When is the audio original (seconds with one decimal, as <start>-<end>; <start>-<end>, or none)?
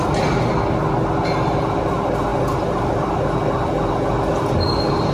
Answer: 0.0-5.1